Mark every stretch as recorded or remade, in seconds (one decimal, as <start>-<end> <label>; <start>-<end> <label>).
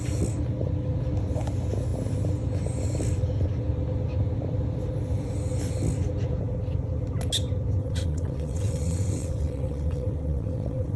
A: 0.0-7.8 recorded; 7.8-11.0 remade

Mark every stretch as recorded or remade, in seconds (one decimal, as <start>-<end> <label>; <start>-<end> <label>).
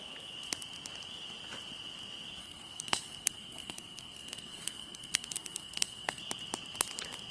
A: 0.0-2.4 recorded; 2.4-6.2 remade; 6.2-7.3 recorded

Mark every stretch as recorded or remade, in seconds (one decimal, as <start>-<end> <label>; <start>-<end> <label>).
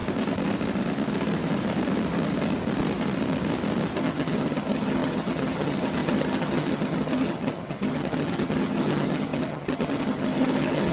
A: 0.0-4.0 recorded; 4.0-10.9 remade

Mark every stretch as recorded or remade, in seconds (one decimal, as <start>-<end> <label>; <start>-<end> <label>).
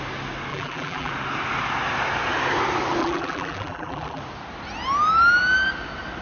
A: 0.0-0.5 recorded; 0.5-1.1 remade; 1.1-3.0 recorded; 3.0-4.2 remade; 4.2-6.2 recorded